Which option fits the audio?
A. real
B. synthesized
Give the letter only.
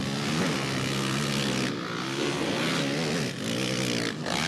A